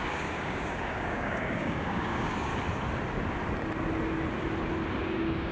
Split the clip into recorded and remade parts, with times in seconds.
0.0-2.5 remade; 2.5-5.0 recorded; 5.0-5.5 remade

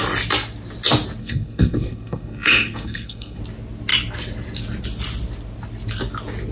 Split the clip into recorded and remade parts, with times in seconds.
0.0-1.2 recorded; 1.2-3.4 remade; 3.4-6.5 recorded

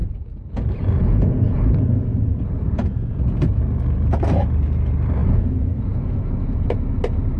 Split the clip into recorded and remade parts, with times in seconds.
0.0-1.7 remade; 1.7-2.1 recorded; 2.1-3.6 remade; 3.6-5.2 recorded; 5.2-6.6 remade; 6.6-7.4 recorded

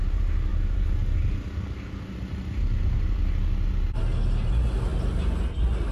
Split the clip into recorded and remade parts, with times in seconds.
0.0-5.9 recorded

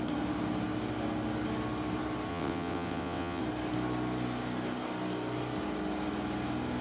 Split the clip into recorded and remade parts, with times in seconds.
0.0-2.3 recorded; 2.3-3.4 remade; 3.4-6.8 recorded